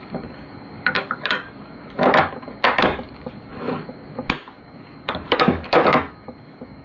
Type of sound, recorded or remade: remade